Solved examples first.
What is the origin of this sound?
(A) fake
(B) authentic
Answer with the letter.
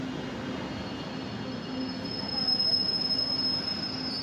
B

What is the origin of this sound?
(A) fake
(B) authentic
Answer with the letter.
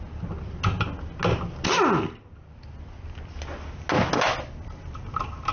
B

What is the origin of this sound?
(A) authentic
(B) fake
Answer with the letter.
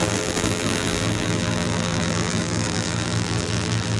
B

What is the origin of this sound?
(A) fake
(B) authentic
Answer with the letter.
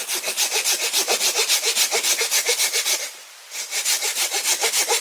B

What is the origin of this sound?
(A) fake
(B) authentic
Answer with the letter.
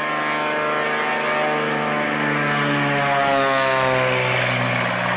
B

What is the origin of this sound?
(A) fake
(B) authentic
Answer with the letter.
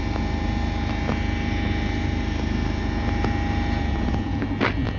B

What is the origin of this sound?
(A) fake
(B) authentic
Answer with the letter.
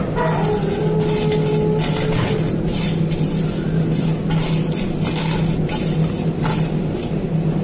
B